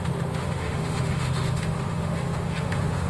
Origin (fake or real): fake